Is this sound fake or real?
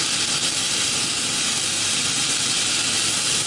real